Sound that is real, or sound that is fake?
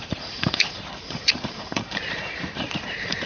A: fake